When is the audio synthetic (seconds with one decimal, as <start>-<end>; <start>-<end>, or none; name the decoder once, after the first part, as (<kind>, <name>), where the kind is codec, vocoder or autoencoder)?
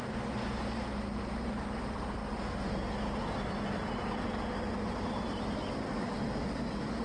none